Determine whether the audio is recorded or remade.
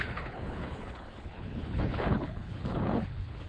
remade